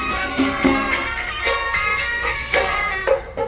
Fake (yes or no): yes